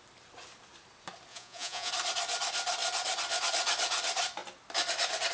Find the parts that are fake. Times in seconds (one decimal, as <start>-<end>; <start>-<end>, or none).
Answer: 1.3-1.9